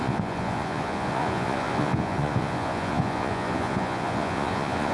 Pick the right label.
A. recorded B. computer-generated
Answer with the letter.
B